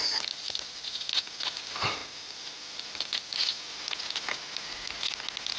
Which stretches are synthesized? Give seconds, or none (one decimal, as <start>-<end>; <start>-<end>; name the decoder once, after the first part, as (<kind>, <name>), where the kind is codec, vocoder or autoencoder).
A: none